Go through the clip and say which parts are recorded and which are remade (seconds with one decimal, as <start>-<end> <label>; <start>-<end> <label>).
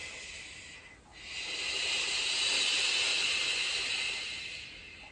0.0-5.1 recorded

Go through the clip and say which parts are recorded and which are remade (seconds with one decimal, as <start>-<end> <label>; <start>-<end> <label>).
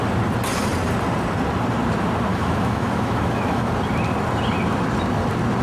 0.0-2.3 recorded; 2.3-3.7 remade; 3.7-5.6 recorded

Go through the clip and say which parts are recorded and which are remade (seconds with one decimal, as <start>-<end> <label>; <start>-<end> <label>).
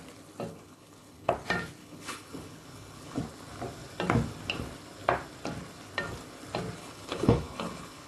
0.0-0.5 recorded; 0.5-1.3 remade; 1.3-1.8 recorded; 1.8-3.2 remade; 3.2-6.8 recorded; 6.8-8.1 remade